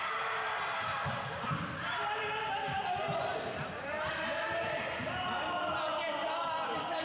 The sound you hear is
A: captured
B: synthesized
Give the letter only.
A